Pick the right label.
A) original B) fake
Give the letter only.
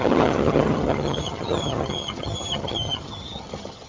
B